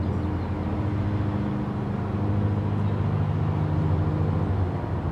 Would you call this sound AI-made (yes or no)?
no